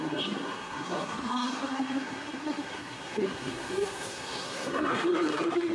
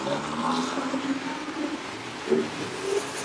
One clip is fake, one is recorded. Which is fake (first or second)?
first